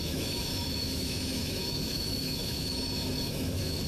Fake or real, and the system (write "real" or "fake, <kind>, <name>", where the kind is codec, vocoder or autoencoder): fake, autoencoder, DAC-VAE